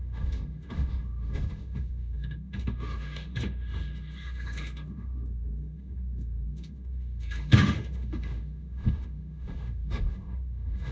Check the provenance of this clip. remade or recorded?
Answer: remade